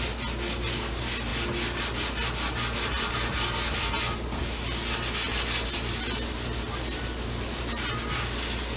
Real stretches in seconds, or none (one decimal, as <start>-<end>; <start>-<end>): 0.0-8.8